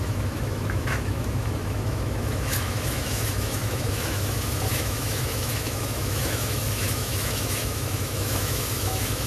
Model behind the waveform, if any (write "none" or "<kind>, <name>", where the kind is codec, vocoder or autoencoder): autoencoder, DAC-VAE